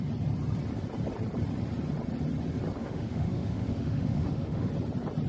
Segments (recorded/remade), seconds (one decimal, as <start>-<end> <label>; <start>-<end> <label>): 0.0-2.8 recorded; 2.8-4.7 remade; 4.7-5.3 recorded